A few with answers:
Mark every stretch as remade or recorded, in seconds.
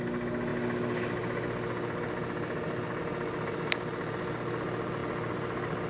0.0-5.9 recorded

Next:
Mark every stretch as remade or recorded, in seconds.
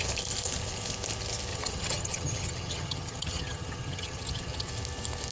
0.0-1.5 recorded; 1.5-4.7 remade; 4.7-5.3 recorded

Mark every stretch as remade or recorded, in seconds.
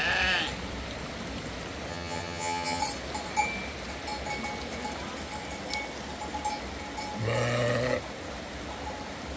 0.0-1.9 recorded; 1.9-2.8 remade; 2.8-9.4 recorded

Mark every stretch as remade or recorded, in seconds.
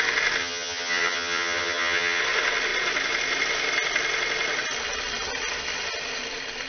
0.0-0.4 recorded; 0.4-2.2 remade; 2.2-6.7 recorded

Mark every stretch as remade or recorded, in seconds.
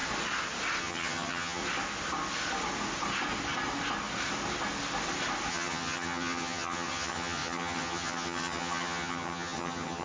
0.0-0.8 recorded; 0.8-1.6 remade; 1.6-5.5 recorded; 5.5-10.0 remade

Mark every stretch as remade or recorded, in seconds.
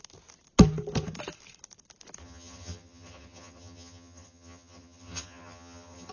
0.0-2.2 recorded; 2.2-6.1 remade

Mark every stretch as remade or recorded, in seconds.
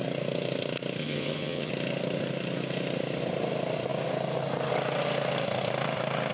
0.0-1.0 recorded; 1.0-1.7 remade; 1.7-6.3 recorded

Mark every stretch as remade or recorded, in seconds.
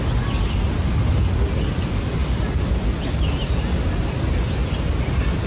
0.0-5.5 recorded